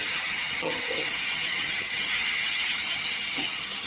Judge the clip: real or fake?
fake